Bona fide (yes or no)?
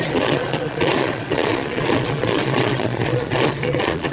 no